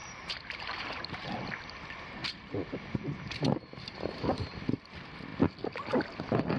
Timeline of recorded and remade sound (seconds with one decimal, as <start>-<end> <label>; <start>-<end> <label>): 0.0-1.5 remade; 1.5-2.2 recorded; 2.2-4.8 remade; 4.8-6.6 recorded